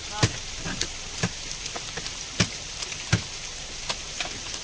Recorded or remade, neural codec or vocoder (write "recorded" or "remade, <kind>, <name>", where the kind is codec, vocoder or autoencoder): recorded